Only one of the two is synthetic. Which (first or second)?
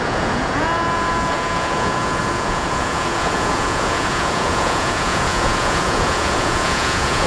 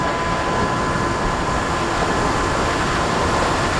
first